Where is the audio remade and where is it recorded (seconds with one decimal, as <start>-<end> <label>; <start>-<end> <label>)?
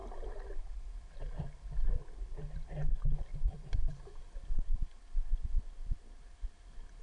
0.0-3.3 recorded; 3.3-4.1 remade; 4.1-7.0 recorded